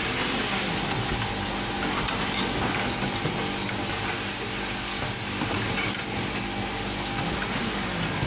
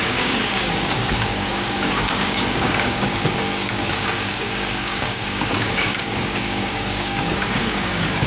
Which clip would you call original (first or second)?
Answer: first